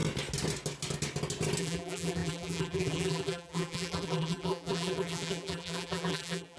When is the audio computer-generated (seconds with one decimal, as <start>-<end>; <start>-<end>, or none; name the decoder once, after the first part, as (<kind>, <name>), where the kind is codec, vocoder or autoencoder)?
1.6-6.6 (vocoder, BigVGAN v2)